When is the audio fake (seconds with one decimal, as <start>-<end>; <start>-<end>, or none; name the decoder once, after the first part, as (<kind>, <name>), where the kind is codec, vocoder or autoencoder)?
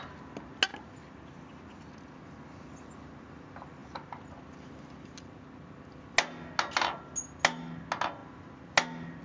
none